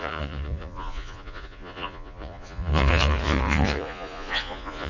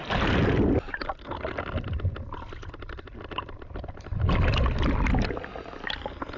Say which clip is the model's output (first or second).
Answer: first